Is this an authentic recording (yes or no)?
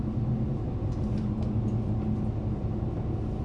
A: yes